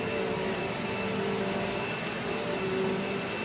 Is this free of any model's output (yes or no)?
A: yes